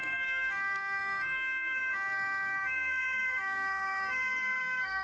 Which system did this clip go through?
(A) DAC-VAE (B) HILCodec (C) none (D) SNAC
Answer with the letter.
D